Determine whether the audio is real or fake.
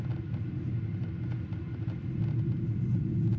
real